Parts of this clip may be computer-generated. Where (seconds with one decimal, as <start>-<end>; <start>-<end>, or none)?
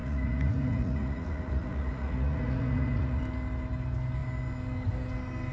0.0-3.2